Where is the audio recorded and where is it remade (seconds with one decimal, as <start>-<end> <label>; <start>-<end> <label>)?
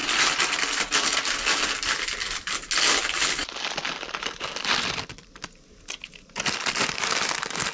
0.0-7.7 recorded